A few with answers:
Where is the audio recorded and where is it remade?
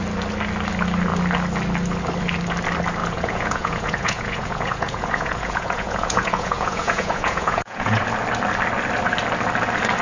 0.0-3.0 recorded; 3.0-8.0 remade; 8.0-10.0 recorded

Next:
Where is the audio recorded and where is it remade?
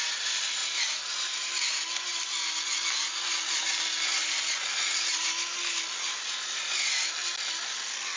0.0-8.2 recorded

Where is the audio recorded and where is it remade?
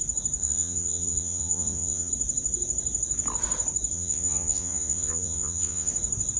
0.0-0.4 recorded; 0.4-2.1 remade; 2.1-3.9 recorded; 3.9-5.9 remade; 5.9-6.4 recorded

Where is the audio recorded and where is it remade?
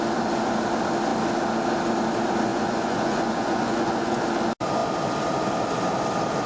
0.0-2.5 recorded; 2.5-4.2 remade; 4.2-6.5 recorded